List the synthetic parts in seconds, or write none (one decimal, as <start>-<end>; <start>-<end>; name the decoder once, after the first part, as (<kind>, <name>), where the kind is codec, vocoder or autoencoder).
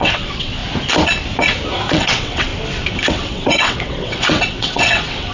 0.0-0.6 (vocoder, WaveNeXt); 1.9-2.5; 3.1-5.3